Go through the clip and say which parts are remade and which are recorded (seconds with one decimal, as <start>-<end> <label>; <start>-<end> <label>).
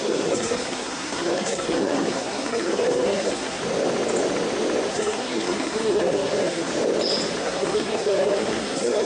0.0-3.6 remade; 3.6-4.9 recorded; 4.9-6.7 remade; 6.7-7.4 recorded; 7.4-9.0 remade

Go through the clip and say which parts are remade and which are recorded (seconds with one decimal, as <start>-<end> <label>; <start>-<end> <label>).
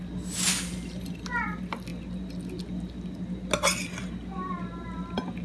0.0-5.4 recorded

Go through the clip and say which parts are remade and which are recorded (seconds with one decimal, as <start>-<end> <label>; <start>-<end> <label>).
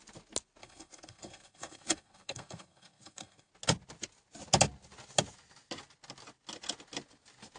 0.0-0.6 recorded; 0.6-3.5 remade; 3.5-7.6 recorded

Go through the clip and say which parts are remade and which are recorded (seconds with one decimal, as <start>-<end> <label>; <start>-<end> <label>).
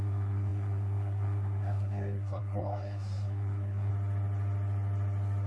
0.0-3.9 remade; 3.9-5.5 recorded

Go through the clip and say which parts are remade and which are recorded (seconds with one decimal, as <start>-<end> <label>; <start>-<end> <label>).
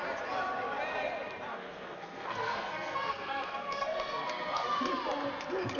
0.0-1.5 recorded; 1.5-4.9 remade; 4.9-5.8 recorded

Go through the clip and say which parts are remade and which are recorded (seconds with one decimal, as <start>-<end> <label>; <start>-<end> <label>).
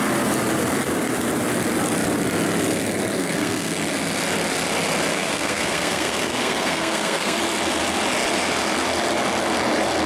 0.0-3.2 recorded; 3.2-3.8 remade; 3.8-5.1 recorded; 5.1-7.4 remade; 7.4-10.1 recorded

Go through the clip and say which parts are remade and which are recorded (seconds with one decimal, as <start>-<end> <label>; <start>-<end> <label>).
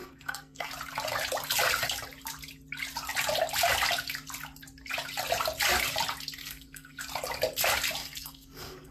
0.0-0.7 remade; 0.7-6.4 recorded; 6.4-7.0 remade; 7.0-8.0 recorded; 8.0-8.9 remade